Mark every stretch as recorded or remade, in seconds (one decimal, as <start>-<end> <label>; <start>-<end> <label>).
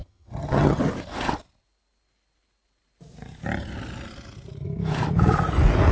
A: 0.0-0.8 remade; 0.8-5.9 recorded